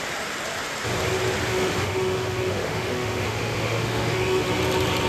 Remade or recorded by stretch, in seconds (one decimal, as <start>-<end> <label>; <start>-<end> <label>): 0.0-1.5 recorded; 1.5-4.6 remade; 4.6-5.1 recorded